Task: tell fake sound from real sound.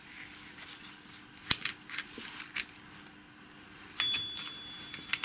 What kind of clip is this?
real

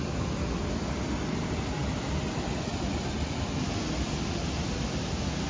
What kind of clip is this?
real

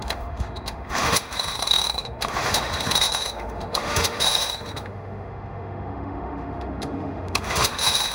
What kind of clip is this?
fake